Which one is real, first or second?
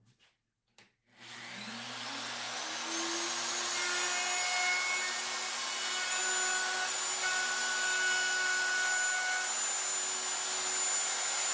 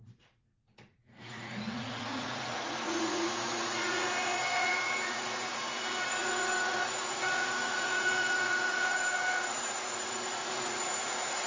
first